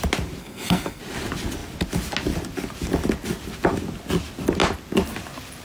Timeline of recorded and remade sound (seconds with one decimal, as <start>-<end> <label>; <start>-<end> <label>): 0.0-0.4 recorded; 0.4-1.0 remade; 1.0-5.6 recorded